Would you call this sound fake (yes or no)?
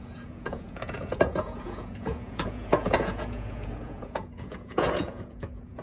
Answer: yes